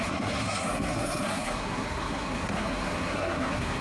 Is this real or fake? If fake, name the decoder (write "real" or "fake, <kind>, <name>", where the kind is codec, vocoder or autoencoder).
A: fake, codec, SNAC